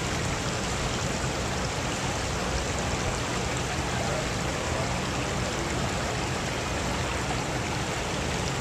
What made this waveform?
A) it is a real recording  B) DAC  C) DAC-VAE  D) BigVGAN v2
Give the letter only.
A